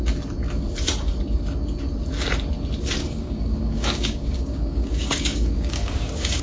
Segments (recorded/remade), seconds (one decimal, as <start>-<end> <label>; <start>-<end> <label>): 0.0-3.0 recorded; 3.0-6.4 remade